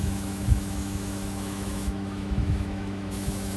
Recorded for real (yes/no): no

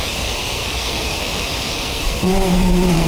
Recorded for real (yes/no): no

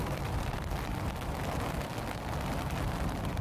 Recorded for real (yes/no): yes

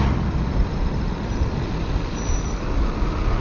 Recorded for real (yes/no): yes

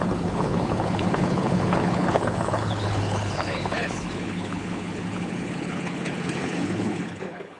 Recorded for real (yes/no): no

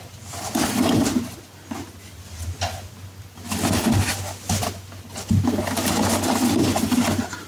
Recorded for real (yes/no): yes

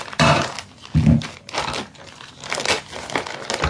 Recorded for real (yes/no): yes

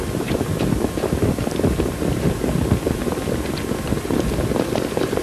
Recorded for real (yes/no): yes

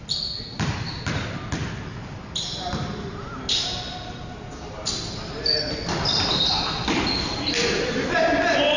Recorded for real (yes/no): yes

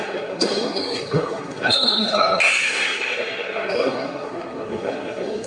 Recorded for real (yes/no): no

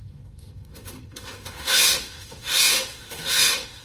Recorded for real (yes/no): no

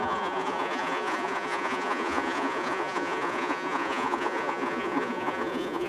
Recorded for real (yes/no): no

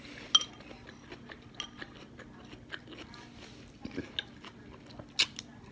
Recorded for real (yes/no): yes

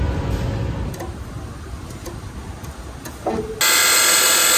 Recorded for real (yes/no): yes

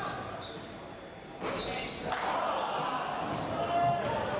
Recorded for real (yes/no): yes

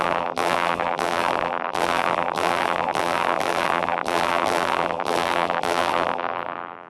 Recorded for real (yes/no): no